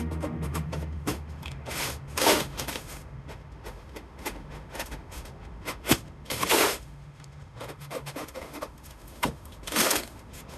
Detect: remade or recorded remade